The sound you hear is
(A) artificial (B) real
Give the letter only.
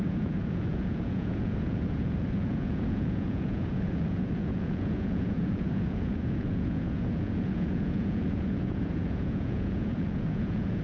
A